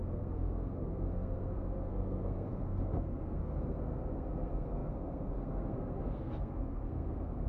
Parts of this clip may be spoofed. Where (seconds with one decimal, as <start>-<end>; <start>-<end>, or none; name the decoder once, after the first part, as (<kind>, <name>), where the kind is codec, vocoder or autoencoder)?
0.0-7.5 (codec, SNAC)